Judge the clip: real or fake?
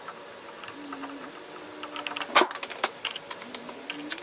real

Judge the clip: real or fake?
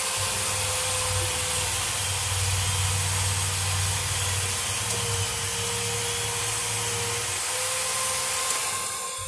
real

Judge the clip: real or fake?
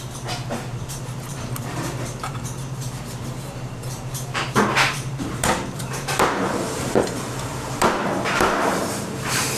fake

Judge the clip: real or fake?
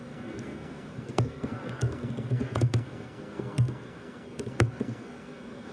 fake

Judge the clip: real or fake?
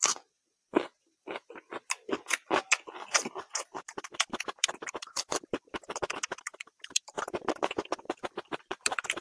fake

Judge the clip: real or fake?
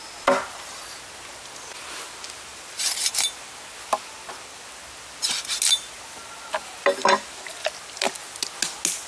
real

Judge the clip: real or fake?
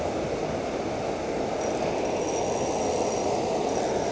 real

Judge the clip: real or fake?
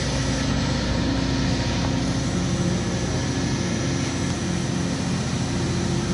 real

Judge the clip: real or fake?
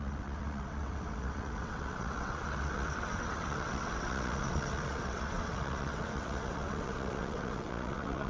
fake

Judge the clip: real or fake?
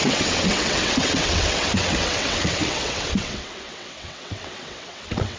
fake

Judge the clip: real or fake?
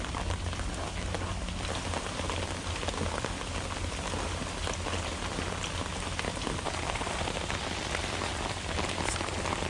real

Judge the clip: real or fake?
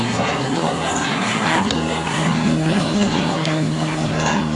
fake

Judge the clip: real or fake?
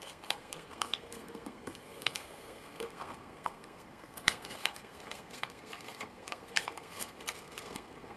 fake